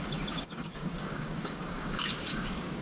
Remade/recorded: remade